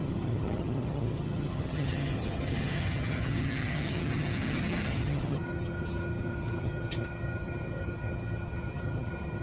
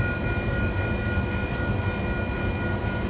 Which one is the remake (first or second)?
first